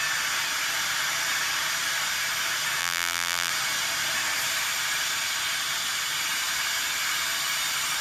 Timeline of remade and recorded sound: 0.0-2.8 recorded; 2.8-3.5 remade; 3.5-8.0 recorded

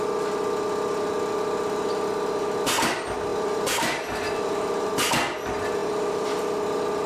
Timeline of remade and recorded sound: 0.0-3.3 recorded; 3.3-4.9 remade; 4.9-5.8 recorded; 5.8-6.4 remade; 6.4-7.1 recorded